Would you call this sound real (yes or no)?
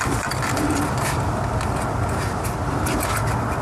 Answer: yes